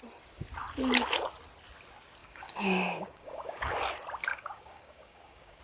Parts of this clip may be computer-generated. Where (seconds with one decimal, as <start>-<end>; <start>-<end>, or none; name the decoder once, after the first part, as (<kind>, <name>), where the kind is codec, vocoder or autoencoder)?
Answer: 2.2-3.7 (codec, DAC); 4.3-5.6

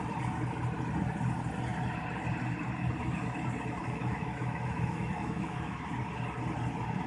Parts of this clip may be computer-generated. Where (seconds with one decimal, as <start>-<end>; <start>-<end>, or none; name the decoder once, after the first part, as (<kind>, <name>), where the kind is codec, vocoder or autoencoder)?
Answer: 3.8-5.9 (autoencoder, DAC-VAE)

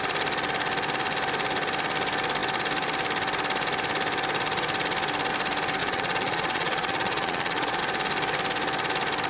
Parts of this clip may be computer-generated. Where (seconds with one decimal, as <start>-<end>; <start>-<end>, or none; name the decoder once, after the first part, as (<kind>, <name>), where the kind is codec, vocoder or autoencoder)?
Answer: 5.8-7.8 (vocoder, Vocos)

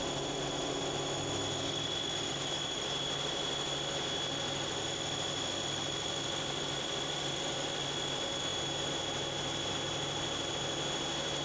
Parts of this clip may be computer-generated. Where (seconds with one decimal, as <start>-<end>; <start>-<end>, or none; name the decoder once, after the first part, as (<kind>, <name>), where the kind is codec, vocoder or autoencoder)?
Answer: none